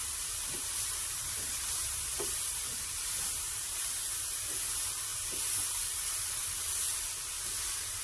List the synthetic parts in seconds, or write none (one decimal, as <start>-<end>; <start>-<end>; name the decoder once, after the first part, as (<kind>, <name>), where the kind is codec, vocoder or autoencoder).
0.0-4.0 (vocoder, BigVGAN v2); 5.1-6.3